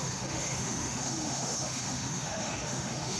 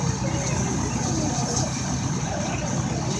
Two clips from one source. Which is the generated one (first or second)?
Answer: first